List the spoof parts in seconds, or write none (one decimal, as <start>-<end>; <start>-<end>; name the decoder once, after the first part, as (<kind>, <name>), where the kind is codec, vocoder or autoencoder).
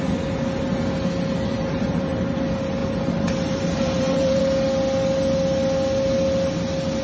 1.5-2.4 (vocoder, BigVGAN v2); 2.8-4.4